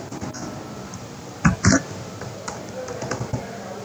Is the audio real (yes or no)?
no